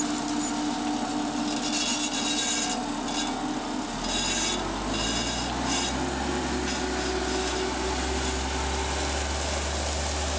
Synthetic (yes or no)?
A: no